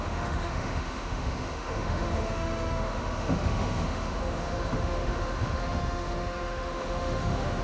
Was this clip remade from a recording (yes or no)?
yes